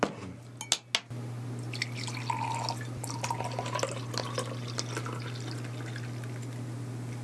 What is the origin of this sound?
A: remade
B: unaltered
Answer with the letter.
B